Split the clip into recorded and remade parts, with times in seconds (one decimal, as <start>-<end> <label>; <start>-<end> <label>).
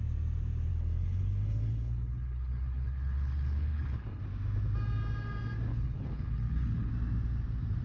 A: 0.0-0.7 recorded; 0.7-4.2 remade; 4.2-5.7 recorded; 5.7-6.9 remade; 6.9-7.8 recorded